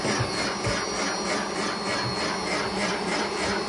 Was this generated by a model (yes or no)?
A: no